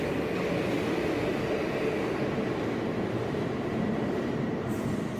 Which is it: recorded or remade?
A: recorded